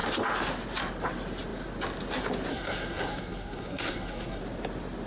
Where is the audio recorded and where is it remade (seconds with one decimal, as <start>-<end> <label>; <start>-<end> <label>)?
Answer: 0.0-2.5 recorded; 2.5-4.4 remade; 4.4-5.1 recorded